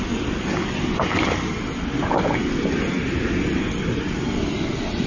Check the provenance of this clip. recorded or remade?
recorded